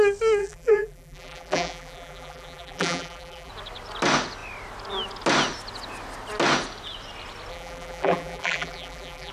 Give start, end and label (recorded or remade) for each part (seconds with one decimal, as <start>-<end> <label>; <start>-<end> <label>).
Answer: 0.0-0.4 recorded; 0.4-3.5 remade; 3.5-7.5 recorded; 7.5-9.3 remade